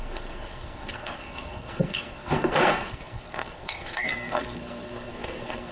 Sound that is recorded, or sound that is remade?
remade